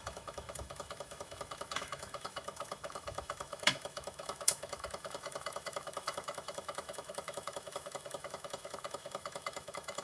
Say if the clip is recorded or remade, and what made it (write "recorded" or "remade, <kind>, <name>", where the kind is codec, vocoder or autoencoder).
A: remade, autoencoder, DAC-VAE